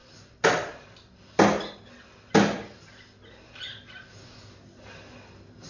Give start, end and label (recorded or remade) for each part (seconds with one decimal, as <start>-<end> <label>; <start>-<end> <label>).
0.0-5.7 recorded